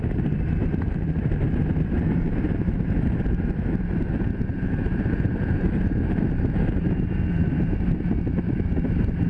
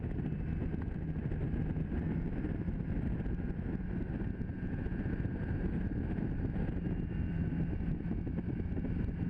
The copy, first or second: first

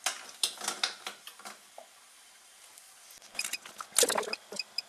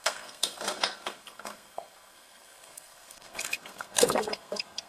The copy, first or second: second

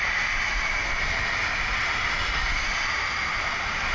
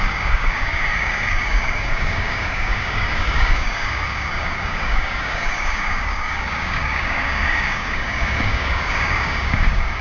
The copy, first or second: second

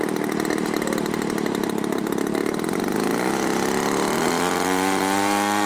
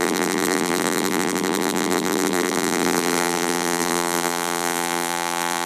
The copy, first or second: second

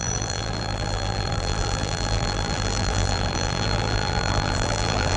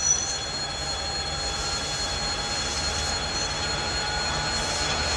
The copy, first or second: first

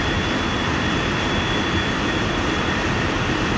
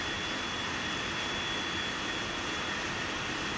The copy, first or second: first